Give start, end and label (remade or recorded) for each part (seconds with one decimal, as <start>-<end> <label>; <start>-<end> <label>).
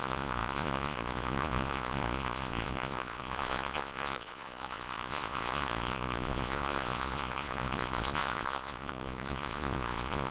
0.0-10.3 remade